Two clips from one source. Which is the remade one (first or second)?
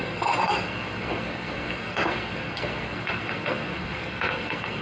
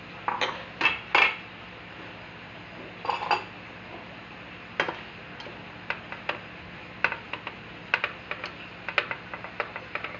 first